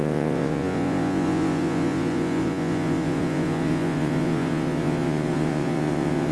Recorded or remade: remade